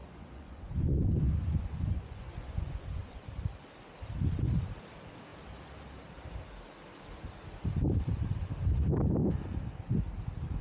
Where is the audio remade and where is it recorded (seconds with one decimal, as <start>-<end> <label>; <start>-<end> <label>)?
0.0-3.3 remade; 3.3-10.6 recorded